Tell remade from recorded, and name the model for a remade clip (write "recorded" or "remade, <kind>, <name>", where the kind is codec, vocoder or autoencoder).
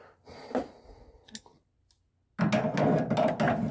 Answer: recorded